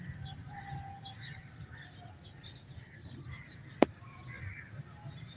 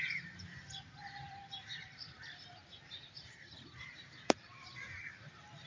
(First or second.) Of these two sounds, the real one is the first